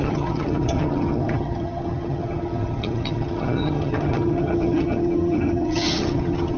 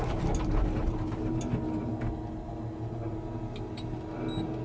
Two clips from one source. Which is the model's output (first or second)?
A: first